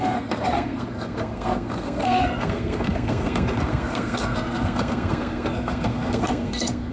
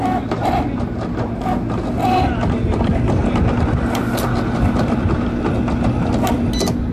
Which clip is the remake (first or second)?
first